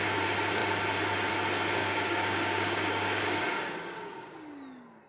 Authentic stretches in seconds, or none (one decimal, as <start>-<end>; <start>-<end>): 0.0-1.8; 4.3-5.1